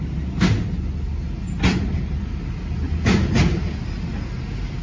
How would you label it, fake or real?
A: real